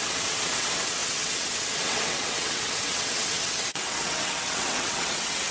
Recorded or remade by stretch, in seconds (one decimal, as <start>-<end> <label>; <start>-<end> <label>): 0.0-5.5 remade

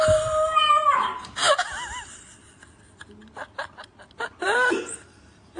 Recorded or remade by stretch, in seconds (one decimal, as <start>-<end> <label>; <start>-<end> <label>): 0.0-1.4 remade; 1.4-4.2 recorded; 4.2-5.6 remade

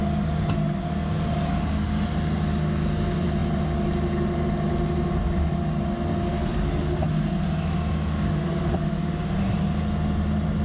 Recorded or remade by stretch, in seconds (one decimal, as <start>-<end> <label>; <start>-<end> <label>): 0.0-10.6 recorded

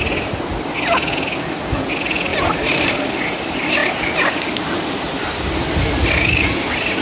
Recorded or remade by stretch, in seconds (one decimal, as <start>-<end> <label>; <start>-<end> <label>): 0.0-2.3 recorded; 2.3-2.9 remade; 2.9-7.0 recorded

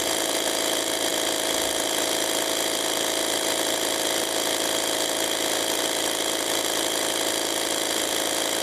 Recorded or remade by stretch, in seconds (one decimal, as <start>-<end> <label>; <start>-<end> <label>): 0.0-8.6 recorded

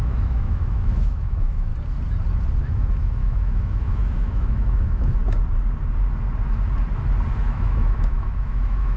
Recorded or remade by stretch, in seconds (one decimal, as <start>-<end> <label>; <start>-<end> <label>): 0.0-1.7 remade; 1.7-2.6 recorded; 2.6-5.2 remade; 5.2-7.4 recorded; 7.4-9.0 remade